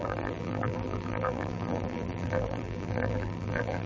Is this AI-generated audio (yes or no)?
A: yes